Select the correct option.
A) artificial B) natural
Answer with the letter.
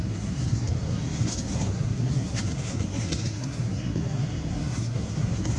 A